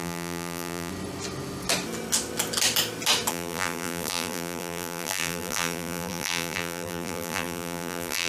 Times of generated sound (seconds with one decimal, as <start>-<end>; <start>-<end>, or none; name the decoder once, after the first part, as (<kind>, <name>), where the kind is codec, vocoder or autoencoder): 0.0-0.9 (vocoder, BigVGAN v2); 3.3-8.3